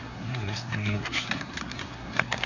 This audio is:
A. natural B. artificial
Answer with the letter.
B